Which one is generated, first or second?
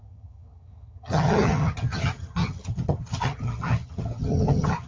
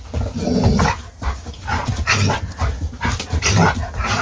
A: first